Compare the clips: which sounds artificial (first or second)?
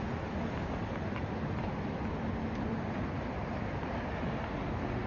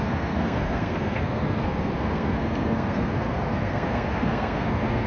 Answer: second